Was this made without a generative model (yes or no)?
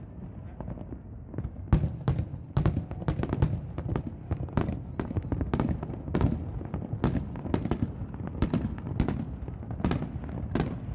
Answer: yes